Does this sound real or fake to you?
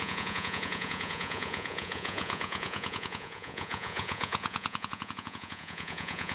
fake